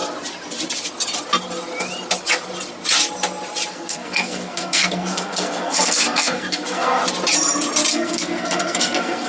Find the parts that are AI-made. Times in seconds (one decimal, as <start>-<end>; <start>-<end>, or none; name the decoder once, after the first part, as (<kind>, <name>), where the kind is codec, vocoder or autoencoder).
3.7-7.0 (codec, SNAC); 7.9-9.3